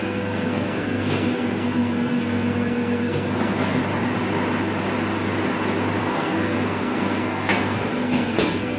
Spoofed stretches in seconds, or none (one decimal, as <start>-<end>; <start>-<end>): 0.0-3.8; 6.0-8.8